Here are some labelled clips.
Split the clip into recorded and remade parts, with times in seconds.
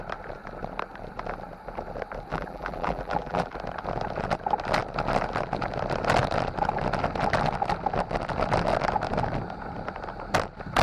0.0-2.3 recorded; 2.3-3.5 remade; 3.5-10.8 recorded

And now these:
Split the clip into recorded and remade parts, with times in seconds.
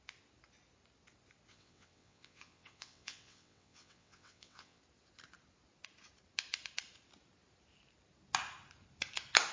0.0-1.5 recorded; 1.5-4.8 remade; 4.8-9.5 recorded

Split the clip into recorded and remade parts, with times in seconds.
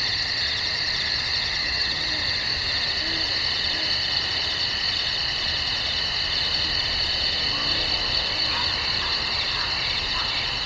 0.0-1.6 recorded; 1.6-2.1 remade; 2.1-10.7 recorded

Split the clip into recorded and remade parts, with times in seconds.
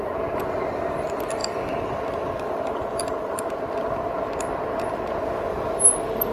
0.0-6.3 recorded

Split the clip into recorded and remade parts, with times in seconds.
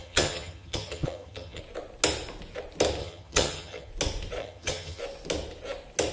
0.0-1.6 remade; 1.6-3.0 recorded; 3.0-3.9 remade; 3.9-4.4 recorded; 4.4-5.0 remade; 5.0-6.1 recorded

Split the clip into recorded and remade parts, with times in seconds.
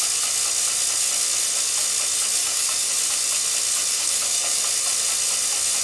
0.0-2.4 recorded; 2.4-2.9 remade; 2.9-3.9 recorded; 3.9-4.6 remade; 4.6-5.8 recorded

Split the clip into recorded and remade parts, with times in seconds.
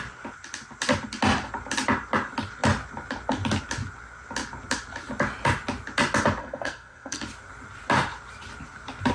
0.0-6.4 recorded; 6.4-7.2 remade; 7.2-9.1 recorded